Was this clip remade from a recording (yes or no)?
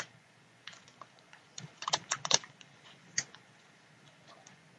yes